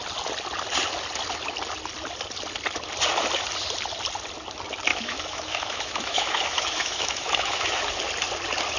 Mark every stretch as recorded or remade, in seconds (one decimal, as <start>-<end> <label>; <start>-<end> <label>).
0.0-4.9 recorded; 4.9-7.8 remade; 7.8-8.8 recorded